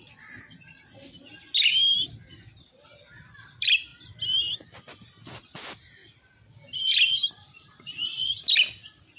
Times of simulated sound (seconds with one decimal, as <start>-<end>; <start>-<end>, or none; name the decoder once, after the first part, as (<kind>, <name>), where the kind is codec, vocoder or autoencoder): none